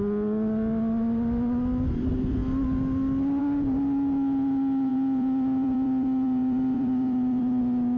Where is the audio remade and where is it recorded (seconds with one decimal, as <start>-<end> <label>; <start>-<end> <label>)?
0.0-4.9 recorded; 4.9-7.6 remade; 7.6-8.0 recorded